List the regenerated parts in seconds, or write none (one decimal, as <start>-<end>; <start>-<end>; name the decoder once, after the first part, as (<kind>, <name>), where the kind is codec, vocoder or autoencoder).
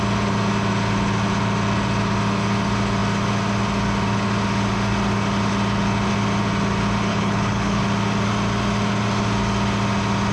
7.1-7.8 (codec, HILCodec)